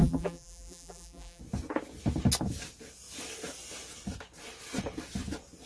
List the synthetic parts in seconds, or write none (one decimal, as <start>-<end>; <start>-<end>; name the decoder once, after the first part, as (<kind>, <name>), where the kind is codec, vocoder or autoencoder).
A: 0.0-1.4 (vocoder, BigVGAN v2)